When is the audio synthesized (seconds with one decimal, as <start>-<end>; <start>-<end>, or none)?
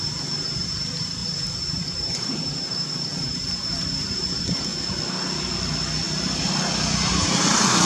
0.0-4.7; 7.1-7.9